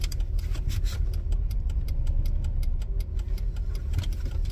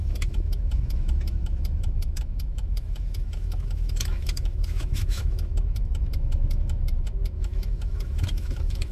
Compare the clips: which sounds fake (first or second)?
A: second